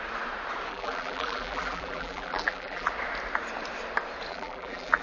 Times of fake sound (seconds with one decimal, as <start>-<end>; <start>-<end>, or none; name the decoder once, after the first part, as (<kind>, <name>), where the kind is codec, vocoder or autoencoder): 0.7-2.9 (vocoder, BigVGAN v2); 4.3-5.0

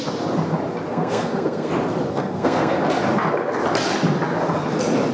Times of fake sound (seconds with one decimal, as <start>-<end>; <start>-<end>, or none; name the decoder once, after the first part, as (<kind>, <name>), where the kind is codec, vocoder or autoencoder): 0.9-1.7 (codec, SNAC); 2.1-2.8